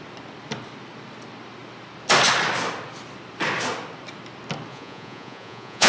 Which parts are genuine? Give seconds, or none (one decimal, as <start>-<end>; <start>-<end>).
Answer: 0.0-4.7